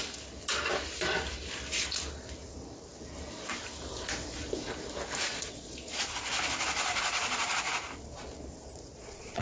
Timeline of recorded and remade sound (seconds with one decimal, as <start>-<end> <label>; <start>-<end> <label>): 0.0-5.3 recorded; 5.3-6.0 remade; 6.0-6.9 recorded; 6.9-7.5 remade; 7.5-8.7 recorded; 8.7-9.4 remade